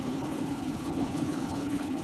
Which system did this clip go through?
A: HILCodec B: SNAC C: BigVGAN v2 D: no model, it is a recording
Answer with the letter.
A